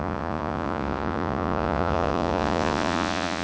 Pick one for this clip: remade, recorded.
remade